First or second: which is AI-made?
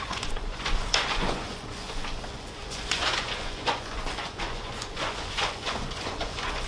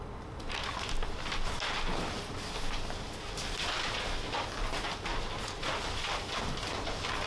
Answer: first